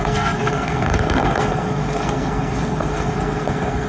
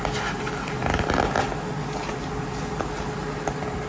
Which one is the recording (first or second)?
second